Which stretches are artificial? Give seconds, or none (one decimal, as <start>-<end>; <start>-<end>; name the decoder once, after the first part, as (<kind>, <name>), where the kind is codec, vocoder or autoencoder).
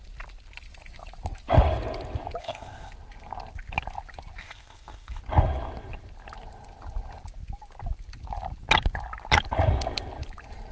2.4-2.9 (codec, ZipCodec); 4.4-5.2